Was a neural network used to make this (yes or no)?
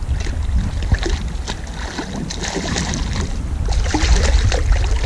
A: no